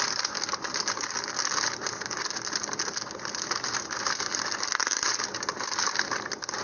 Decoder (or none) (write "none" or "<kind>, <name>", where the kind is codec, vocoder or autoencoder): none